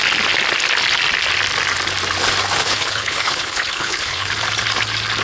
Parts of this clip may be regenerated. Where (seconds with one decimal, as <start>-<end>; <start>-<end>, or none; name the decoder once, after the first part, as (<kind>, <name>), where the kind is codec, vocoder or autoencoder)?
2.6-4.3 (codec, HILCodec)